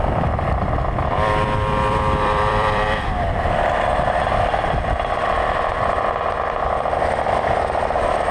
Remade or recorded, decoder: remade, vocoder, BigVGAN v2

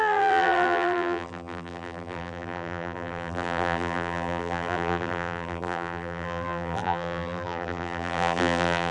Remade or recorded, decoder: remade, vocoder, BigVGAN v2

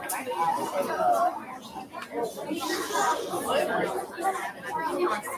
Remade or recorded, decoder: recorded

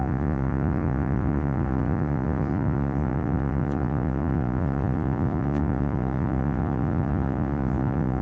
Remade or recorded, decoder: remade, vocoder, Vocos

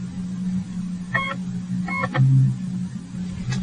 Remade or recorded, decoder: recorded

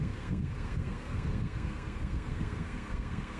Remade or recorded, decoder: remade, codec, SNAC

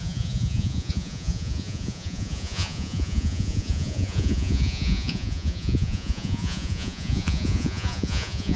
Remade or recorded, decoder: remade, vocoder, Vocos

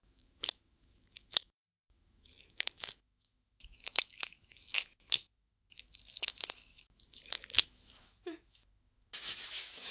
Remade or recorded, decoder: remade, autoencoder, DAC-VAE